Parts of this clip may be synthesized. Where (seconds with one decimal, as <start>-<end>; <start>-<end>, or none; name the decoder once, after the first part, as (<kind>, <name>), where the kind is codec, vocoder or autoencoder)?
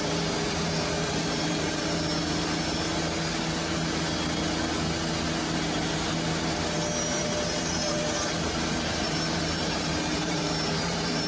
0.0-2.1 (vocoder, BigVGAN v2); 7.0-11.3